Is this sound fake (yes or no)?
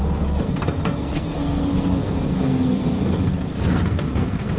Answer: yes